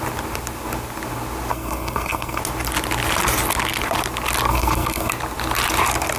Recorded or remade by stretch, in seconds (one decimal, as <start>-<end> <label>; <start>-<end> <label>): 0.0-1.5 recorded; 1.5-2.4 remade; 2.4-4.5 recorded; 4.5-5.1 remade; 5.1-6.2 recorded